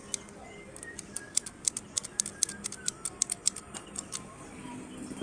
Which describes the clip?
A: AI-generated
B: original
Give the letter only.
B